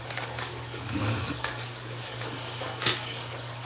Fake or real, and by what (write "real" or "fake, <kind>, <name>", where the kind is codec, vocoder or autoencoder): fake, codec, DAC